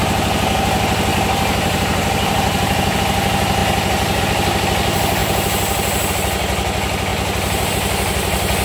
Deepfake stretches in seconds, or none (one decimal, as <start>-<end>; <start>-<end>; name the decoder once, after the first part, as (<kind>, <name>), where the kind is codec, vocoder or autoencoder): 1.1-3.0 (vocoder, BigVGAN v2); 7.1-7.7